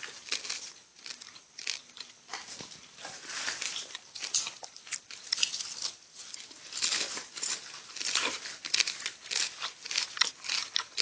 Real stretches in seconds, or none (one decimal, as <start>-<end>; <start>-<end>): 0.0-11.0